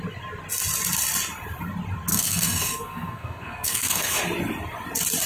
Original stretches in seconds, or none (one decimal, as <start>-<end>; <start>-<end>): 0.0-2.1; 4.2-5.3